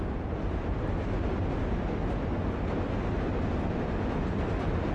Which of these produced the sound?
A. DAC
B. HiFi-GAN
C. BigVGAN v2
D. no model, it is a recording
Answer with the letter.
D